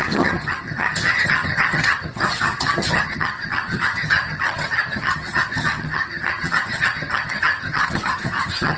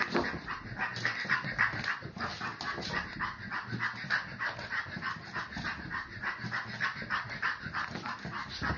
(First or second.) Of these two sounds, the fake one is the first